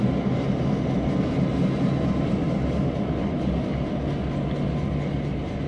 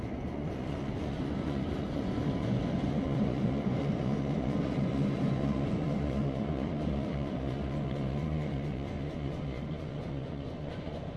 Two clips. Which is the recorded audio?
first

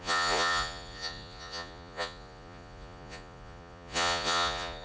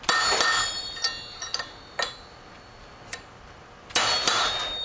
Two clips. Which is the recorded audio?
second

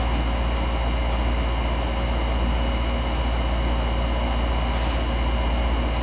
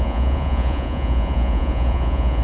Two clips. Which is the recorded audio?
first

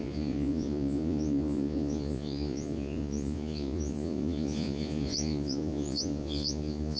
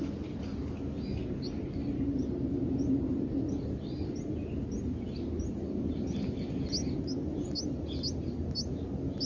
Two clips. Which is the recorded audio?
second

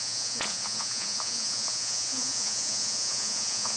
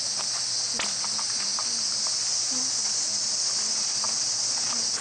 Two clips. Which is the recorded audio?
second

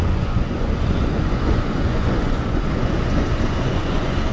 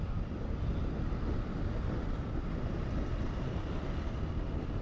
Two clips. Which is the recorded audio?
second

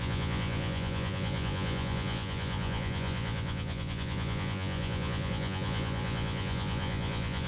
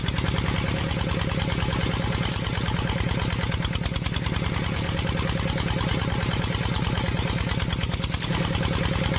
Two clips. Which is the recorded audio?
second